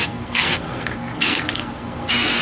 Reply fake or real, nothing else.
fake